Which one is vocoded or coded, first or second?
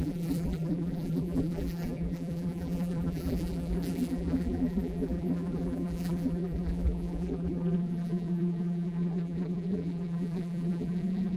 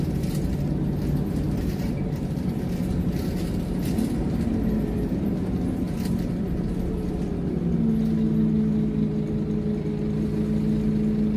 first